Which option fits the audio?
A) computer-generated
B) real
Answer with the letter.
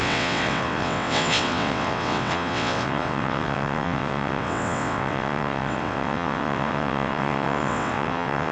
A